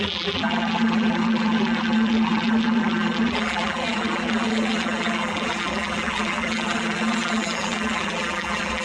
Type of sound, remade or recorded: remade